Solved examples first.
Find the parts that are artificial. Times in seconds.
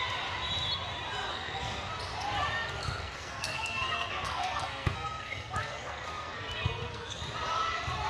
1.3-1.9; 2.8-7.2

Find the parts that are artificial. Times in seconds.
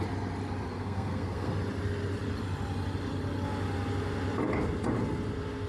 0.7-1.5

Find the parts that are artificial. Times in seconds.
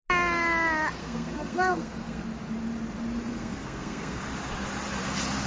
1.0-2.2; 3.3-4.2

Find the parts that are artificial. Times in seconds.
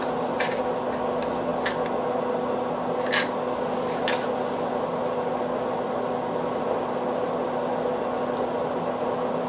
none